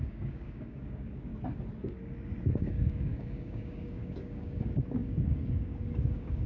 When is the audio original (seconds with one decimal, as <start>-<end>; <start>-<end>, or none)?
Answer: 1.3-2.5

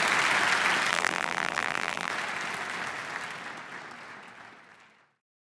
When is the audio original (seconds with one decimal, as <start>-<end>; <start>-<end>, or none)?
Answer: 0.0-0.9; 2.1-5.6

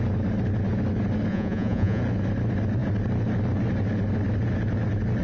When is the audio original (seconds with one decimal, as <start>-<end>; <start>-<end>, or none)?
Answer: 0.0-1.3; 2.0-5.2

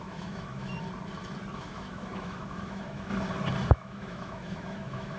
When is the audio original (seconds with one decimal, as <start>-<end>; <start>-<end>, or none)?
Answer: 0.7-1.5; 3.1-3.7

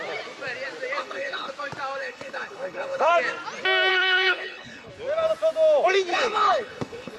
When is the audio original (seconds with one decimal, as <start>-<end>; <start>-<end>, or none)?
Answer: 0.0-1.0; 1.5-2.0; 3.1-3.9; 4.9-6.1

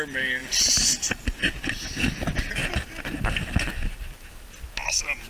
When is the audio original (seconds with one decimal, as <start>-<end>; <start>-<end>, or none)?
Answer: 0.0-5.3